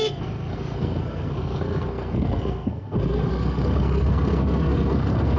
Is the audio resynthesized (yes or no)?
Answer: yes